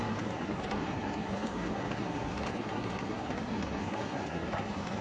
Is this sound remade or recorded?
remade